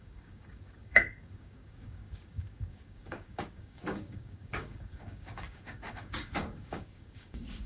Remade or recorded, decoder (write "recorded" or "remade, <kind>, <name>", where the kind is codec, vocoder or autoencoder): remade, codec, DAC